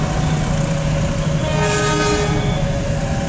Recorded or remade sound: recorded